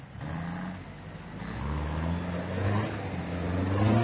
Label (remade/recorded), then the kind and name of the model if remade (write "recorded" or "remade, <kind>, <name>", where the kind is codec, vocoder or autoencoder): recorded